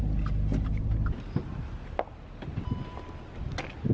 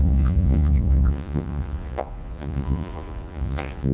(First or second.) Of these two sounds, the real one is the first